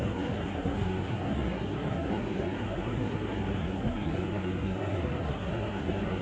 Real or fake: fake